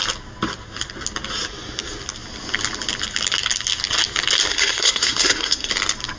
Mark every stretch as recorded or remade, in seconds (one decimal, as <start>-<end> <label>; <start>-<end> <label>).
0.0-4.5 recorded; 4.5-5.7 remade; 5.7-6.2 recorded